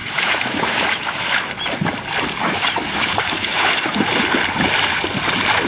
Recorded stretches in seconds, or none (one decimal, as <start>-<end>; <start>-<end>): 1.5-2.4; 4.0-5.7